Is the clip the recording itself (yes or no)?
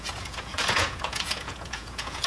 no